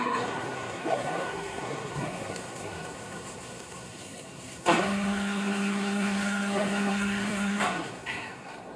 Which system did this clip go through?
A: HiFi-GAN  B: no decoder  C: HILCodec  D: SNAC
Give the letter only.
D